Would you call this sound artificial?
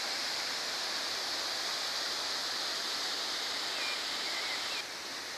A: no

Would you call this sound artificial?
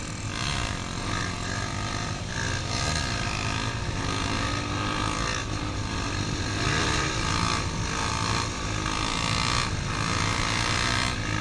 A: no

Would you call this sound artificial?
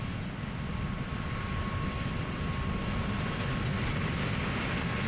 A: no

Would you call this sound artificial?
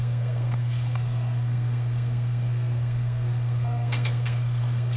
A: yes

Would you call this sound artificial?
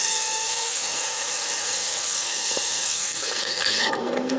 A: yes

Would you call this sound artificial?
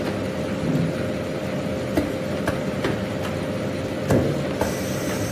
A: no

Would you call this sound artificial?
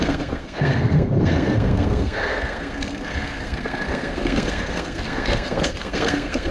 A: yes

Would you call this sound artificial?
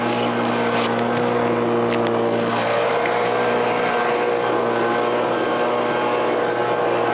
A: no